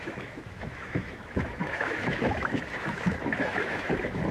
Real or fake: fake